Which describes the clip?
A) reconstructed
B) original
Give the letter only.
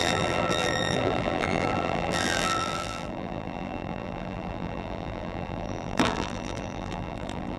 A